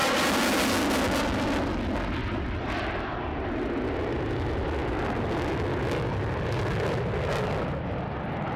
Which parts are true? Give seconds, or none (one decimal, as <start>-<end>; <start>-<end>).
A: 0.0-8.6